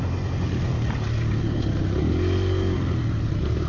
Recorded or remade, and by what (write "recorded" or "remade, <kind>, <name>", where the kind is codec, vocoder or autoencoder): recorded